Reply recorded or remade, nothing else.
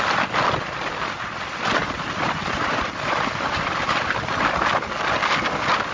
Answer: remade